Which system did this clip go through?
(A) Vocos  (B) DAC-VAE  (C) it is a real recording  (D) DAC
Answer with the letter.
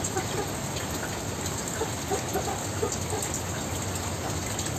C